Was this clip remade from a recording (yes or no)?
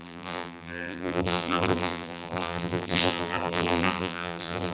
yes